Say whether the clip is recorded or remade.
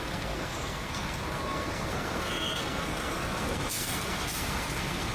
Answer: remade